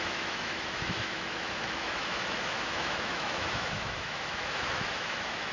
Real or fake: fake